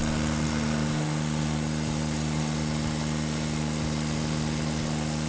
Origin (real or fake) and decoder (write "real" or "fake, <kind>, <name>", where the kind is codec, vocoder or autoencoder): real